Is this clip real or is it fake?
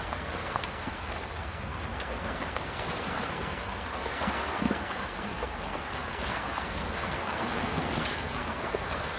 fake